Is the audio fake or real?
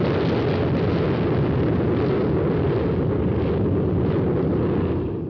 real